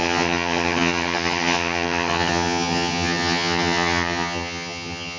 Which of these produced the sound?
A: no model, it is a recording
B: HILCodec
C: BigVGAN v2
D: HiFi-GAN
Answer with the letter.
D